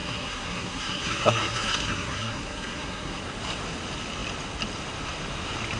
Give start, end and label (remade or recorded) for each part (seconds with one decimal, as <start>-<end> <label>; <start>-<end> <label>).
0.0-3.2 remade; 3.2-5.8 recorded